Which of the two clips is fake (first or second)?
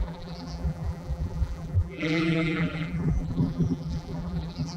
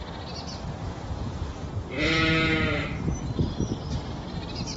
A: first